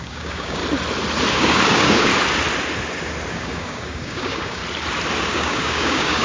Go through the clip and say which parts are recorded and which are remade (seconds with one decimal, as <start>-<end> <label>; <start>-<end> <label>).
0.0-0.6 remade; 0.6-1.3 recorded; 1.3-2.1 remade; 2.1-3.3 recorded; 3.3-4.6 remade; 4.6-5.2 recorded; 5.2-6.2 remade